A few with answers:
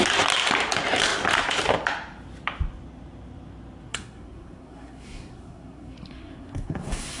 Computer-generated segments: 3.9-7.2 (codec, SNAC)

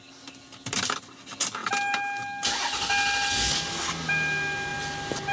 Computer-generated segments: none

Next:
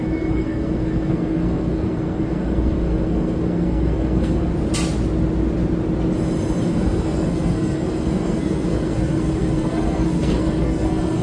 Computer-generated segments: 0.0-4.5 (codec, SNAC); 6.7-11.2

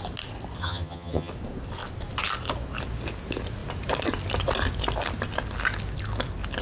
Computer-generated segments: 0.6-1.3 (vocoder, HiFi-GAN)